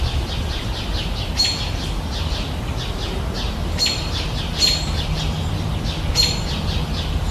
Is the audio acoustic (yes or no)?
yes